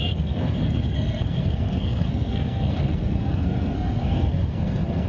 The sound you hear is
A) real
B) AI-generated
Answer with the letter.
B